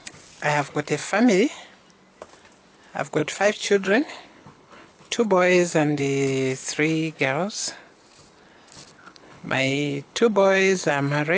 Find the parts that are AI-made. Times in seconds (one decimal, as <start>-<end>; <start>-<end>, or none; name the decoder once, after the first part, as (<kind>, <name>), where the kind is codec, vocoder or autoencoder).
3.2-6.0 (codec, HILCodec); 9.0-10.9